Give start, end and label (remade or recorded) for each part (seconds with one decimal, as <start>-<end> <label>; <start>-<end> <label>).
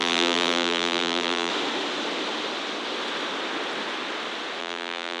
0.0-1.5 remade; 1.5-4.6 recorded; 4.6-5.2 remade